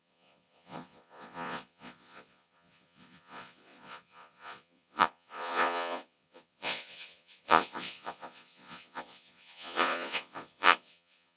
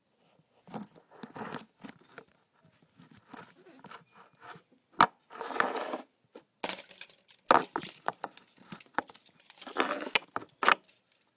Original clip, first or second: second